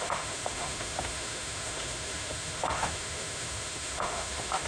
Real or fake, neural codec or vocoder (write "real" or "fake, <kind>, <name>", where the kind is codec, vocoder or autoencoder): fake, autoencoder, DAC-VAE